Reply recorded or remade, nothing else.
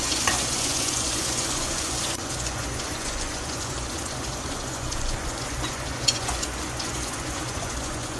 remade